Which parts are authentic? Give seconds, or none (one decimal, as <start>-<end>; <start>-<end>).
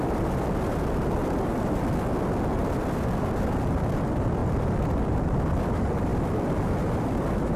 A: 0.0-1.2; 1.8-6.1; 6.6-7.6